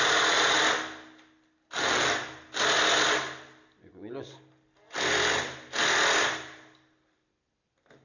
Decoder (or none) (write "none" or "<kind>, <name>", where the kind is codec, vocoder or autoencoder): none